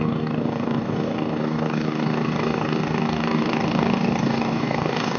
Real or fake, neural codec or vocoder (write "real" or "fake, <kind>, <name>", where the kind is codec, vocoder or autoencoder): fake, codec, DAC